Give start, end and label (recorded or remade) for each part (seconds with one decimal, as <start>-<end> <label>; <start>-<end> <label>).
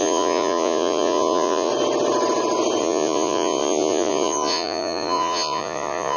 0.0-1.7 remade; 1.7-2.8 recorded; 2.8-6.2 remade